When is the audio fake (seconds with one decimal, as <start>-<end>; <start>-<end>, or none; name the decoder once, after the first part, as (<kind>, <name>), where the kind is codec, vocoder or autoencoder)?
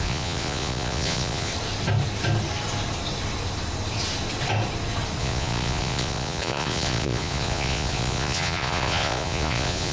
0.0-1.5 (vocoder, Vocos); 5.2-9.9